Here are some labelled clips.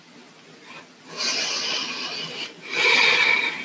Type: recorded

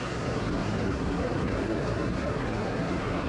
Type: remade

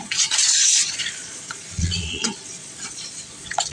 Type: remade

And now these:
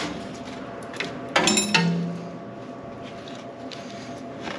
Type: recorded